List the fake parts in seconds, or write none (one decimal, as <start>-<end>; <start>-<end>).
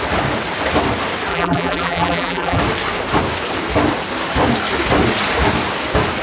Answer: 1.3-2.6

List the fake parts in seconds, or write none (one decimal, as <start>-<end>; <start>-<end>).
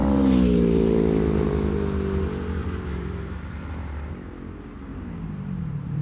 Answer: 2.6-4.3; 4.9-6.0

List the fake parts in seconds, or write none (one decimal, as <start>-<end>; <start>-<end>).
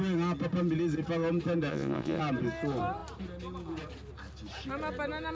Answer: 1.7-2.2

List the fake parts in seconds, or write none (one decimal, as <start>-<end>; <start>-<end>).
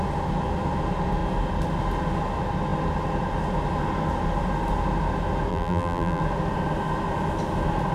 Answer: 5.5-6.2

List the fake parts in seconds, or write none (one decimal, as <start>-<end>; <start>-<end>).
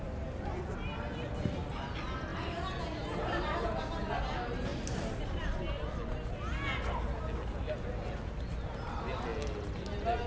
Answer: 4.7-5.7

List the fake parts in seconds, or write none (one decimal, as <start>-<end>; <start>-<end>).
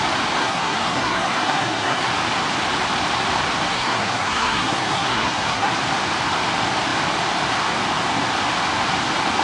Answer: 0.4-2.1; 3.7-5.7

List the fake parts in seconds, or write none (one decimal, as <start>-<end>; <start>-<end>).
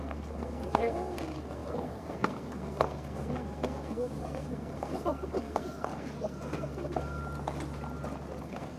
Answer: 0.0-7.2; 8.4-8.8